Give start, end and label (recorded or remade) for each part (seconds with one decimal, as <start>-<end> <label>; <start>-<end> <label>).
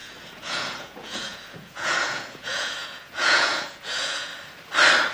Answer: 0.0-4.3 remade; 4.3-5.1 recorded